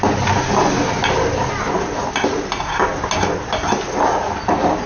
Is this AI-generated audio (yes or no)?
no